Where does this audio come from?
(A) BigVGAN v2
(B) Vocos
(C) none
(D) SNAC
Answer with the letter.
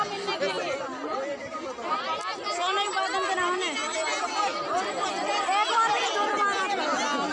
C